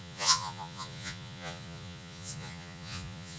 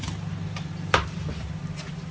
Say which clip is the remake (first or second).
first